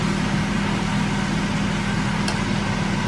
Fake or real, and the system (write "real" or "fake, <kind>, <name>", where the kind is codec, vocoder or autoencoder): real